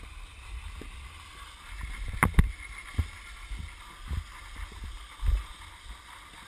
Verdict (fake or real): real